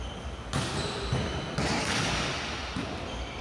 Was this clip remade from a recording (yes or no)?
no